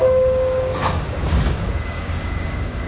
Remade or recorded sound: remade